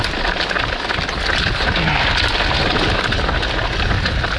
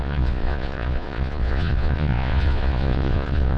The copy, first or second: second